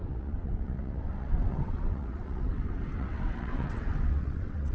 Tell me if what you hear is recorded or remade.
remade